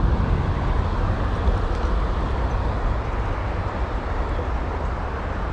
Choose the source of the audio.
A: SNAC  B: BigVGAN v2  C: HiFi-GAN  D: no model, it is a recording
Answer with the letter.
D